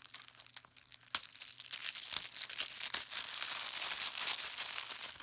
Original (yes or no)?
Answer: yes